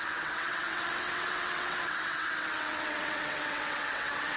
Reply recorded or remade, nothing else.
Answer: remade